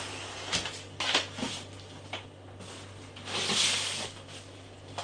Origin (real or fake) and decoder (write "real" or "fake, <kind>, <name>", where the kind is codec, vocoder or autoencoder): real